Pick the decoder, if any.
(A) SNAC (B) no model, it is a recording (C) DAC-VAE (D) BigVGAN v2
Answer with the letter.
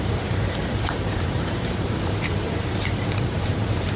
D